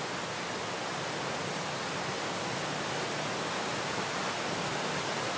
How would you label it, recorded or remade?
recorded